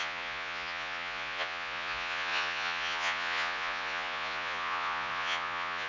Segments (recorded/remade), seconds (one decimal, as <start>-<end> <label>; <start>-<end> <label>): 0.0-5.9 remade